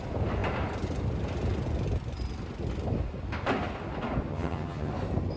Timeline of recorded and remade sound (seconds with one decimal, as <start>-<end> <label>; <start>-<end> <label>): 0.0-4.3 recorded; 4.3-4.9 remade; 4.9-5.4 recorded